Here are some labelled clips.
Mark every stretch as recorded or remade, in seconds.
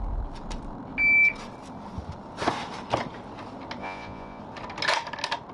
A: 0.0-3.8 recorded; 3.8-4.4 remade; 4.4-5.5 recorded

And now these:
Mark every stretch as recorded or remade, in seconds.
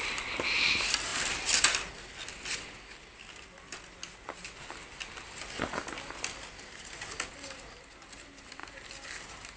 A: 0.0-9.6 recorded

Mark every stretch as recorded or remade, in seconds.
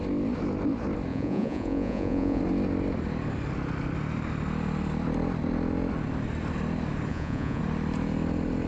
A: 0.0-1.1 recorded; 1.1-2.4 remade; 2.4-7.1 recorded; 7.1-7.6 remade; 7.6-8.7 recorded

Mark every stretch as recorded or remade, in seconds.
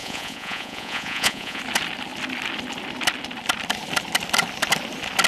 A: 0.0-1.6 remade; 1.6-5.3 recorded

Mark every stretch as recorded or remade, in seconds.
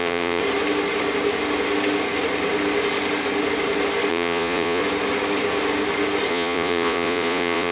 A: 0.0-0.4 remade; 0.4-4.1 recorded; 4.1-4.8 remade; 4.8-6.3 recorded; 6.3-7.7 remade